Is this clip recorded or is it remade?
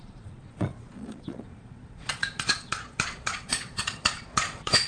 remade